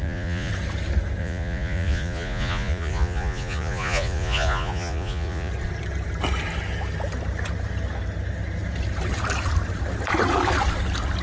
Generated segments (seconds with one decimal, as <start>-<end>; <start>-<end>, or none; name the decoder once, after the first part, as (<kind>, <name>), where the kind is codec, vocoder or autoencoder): 0.0-0.5 (vocoder, Vocos); 1.2-5.5